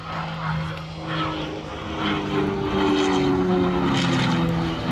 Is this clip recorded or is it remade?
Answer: recorded